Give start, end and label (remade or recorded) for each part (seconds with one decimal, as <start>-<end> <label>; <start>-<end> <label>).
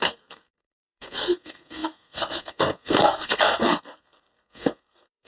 0.0-5.3 remade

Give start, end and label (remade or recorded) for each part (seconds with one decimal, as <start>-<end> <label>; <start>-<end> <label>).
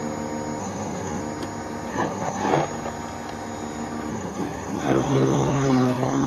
0.0-0.6 recorded; 0.6-1.2 remade; 1.2-1.9 recorded; 1.9-2.5 remade; 2.5-4.1 recorded; 4.1-6.3 remade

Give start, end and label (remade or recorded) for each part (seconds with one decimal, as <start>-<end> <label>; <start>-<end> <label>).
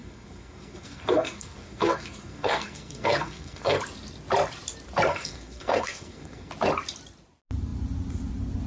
0.0-3.8 remade; 3.8-5.1 recorded; 5.1-6.5 remade; 6.5-8.7 recorded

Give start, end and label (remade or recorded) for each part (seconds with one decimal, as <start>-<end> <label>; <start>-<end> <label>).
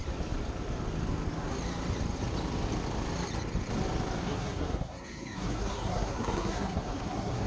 0.0-4.2 recorded; 4.2-7.5 remade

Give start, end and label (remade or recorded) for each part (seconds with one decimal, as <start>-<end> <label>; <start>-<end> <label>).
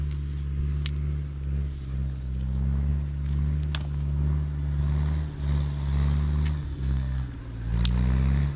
0.0-6.6 recorded; 6.6-7.4 remade; 7.4-8.6 recorded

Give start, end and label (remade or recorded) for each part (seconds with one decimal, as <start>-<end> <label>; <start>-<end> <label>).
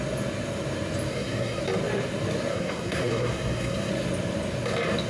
0.0-1.1 recorded; 1.1-1.6 remade; 1.6-2.5 recorded; 2.5-3.9 remade; 3.9-5.1 recorded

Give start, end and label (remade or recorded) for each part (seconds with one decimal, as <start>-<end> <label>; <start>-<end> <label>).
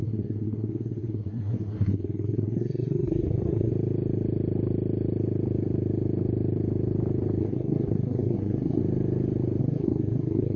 0.0-3.7 remade; 3.7-7.4 recorded; 7.4-8.8 remade; 8.8-9.6 recorded; 9.6-10.6 remade